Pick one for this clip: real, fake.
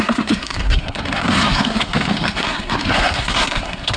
fake